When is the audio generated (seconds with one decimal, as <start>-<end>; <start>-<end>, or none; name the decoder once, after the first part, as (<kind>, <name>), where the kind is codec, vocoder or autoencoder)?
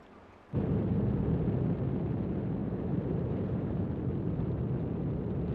2.6-3.8 (vocoder, BigVGAN v2)